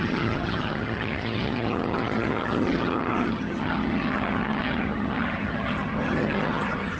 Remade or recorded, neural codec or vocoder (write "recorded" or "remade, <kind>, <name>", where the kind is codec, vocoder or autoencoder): remade, vocoder, HiFi-GAN